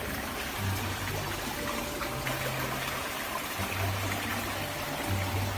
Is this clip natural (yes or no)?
yes